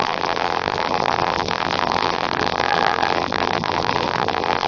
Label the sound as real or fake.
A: fake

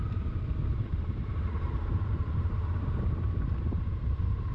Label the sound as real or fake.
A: fake